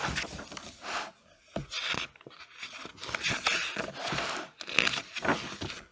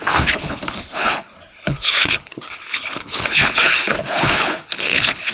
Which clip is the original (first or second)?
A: first